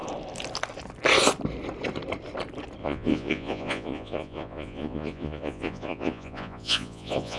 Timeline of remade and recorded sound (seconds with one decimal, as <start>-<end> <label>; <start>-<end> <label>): 0.0-2.8 recorded; 2.8-7.4 remade